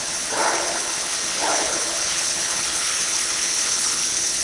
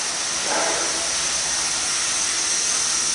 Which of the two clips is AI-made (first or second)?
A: first